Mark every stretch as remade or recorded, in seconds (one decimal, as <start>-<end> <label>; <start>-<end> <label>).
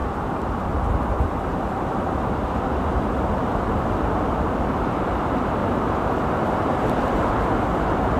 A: 0.0-0.8 remade; 0.8-1.5 recorded; 1.5-2.6 remade; 2.6-5.6 recorded; 5.6-7.3 remade; 7.3-8.2 recorded